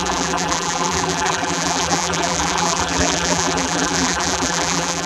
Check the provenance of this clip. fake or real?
fake